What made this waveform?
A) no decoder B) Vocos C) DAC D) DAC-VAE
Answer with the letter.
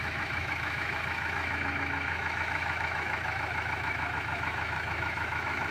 D